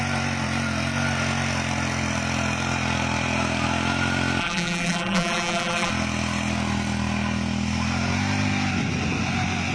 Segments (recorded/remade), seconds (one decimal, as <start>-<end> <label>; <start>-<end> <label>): 0.0-4.4 recorded; 4.4-5.9 remade; 5.9-9.7 recorded